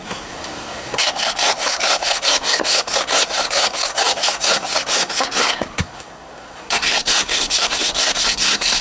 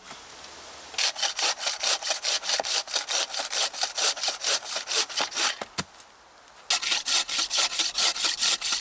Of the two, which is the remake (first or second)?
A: first